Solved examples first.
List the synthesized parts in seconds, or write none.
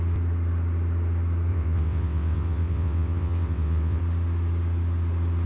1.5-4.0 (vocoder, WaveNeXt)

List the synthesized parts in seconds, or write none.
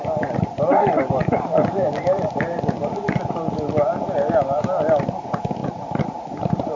1.2-2.9 (vocoder, BigVGAN v2); 5.6-6.8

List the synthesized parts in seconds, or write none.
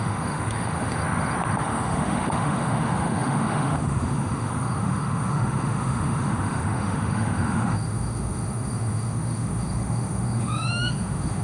0.0-1.0 (autoencoder, DAC-VAE); 1.6-11.4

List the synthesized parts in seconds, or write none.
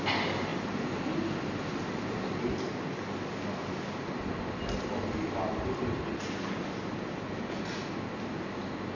none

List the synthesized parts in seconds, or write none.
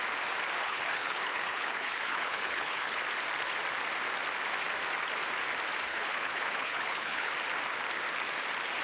0.6-3.0 (codec, HILCodec); 5.9-7.3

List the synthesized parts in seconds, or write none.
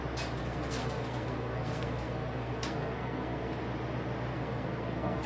0.4-3.6 (codec, SNAC); 4.3-5.3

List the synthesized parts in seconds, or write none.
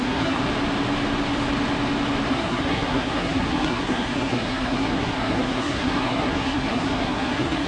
0.0-0.4 (codec, SNAC); 2.3-7.7